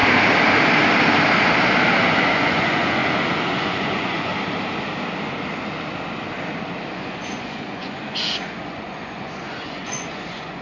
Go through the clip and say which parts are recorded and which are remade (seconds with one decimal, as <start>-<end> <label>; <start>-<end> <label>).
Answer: 0.0-2.0 recorded; 2.0-3.0 remade; 3.0-3.5 recorded; 3.5-4.3 remade; 4.3-6.9 recorded; 6.9-10.6 remade